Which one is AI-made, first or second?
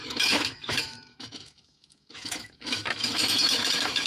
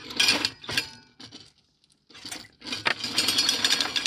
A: first